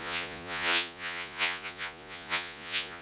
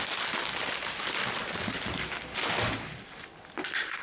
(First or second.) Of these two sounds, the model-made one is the first